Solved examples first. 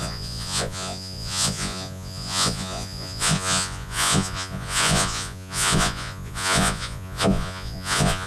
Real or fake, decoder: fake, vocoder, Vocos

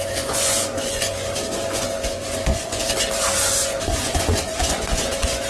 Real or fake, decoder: fake, vocoder, Vocos